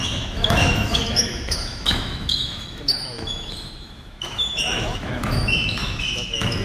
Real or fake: fake